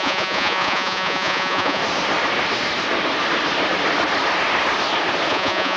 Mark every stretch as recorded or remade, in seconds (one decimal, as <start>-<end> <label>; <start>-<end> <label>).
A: 0.0-1.8 remade; 1.8-5.3 recorded; 5.3-5.8 remade